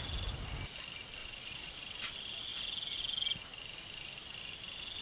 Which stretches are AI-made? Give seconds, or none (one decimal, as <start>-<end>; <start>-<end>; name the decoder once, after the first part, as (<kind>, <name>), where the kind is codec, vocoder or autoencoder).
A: 1.2-1.8 (vocoder, Vocos)